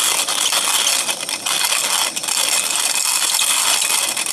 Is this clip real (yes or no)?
yes